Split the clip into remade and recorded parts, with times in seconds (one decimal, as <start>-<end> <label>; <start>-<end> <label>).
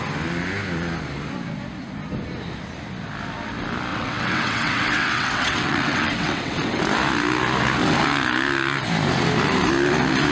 0.0-3.9 recorded; 3.9-6.8 remade; 6.8-10.3 recorded